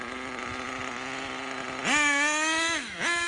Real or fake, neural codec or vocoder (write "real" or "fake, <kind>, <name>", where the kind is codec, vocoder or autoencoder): real